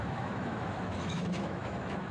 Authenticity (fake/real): fake